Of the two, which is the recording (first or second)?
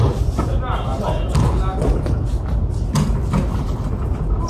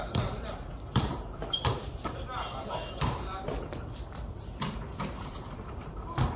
first